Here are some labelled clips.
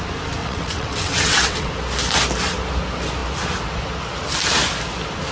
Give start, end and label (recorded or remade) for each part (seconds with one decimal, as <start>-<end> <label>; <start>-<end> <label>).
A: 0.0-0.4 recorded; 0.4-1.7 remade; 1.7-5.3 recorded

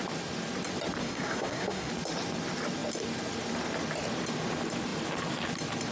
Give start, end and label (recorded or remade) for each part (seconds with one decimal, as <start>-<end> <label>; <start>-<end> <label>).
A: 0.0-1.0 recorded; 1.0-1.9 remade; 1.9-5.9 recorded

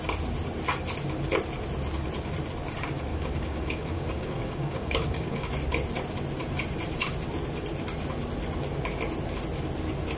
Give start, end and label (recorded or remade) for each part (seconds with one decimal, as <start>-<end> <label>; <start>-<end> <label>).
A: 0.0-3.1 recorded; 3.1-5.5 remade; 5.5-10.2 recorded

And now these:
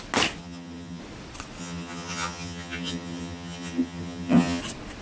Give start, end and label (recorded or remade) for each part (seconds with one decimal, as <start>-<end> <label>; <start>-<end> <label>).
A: 0.0-0.4 recorded; 0.4-1.0 remade; 1.0-1.6 recorded; 1.6-4.6 remade; 4.6-5.0 recorded

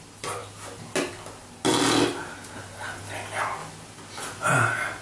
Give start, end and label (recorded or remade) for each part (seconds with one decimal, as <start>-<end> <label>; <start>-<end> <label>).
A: 0.0-5.0 recorded